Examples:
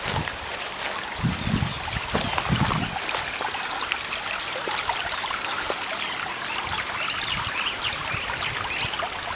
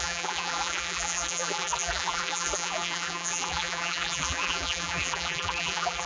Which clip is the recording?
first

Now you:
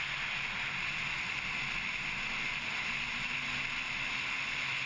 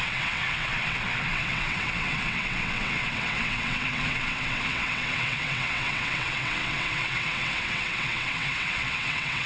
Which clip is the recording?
first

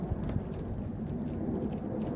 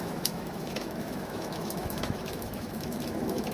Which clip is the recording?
first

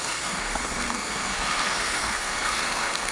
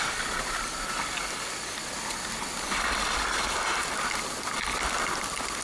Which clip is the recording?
second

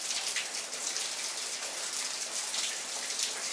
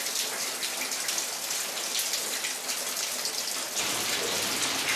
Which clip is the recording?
second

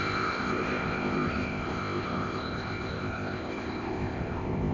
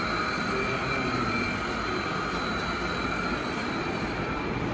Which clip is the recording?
second